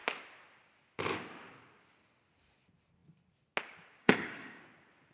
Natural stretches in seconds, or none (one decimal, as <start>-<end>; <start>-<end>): 0.0-4.0; 4.6-5.1